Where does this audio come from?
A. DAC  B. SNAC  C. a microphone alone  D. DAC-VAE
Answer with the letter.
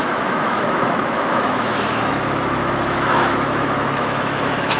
D